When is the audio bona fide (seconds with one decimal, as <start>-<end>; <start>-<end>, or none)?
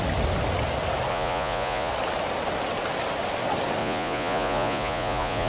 0.0-1.1; 1.9-3.8